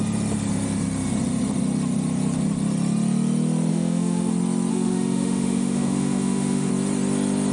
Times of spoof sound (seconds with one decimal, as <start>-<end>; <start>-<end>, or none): 3.7-4.3; 4.7-6.7